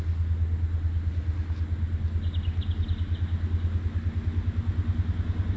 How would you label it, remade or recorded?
recorded